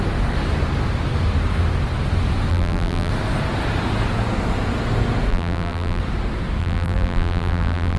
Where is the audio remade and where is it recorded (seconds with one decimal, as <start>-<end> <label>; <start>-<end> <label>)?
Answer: 0.0-2.5 recorded; 2.5-3.1 remade; 3.1-5.3 recorded; 5.3-6.0 remade; 6.0-6.6 recorded; 6.6-8.0 remade